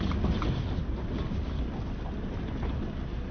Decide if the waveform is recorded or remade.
recorded